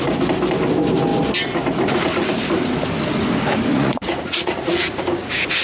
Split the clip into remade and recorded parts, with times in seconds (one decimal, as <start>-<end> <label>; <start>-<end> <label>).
0.0-3.7 recorded; 3.7-5.0 remade; 5.0-5.6 recorded

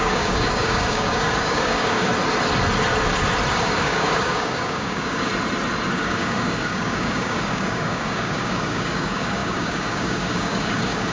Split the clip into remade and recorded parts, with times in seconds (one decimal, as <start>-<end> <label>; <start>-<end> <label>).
0.0-2.1 remade; 2.1-3.5 recorded; 3.5-5.3 remade; 5.3-5.9 recorded; 5.9-11.1 remade